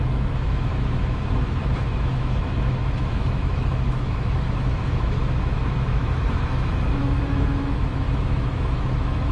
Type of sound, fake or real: fake